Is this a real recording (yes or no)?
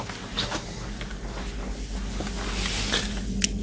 yes